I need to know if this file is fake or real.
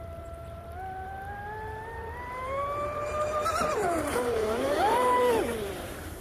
fake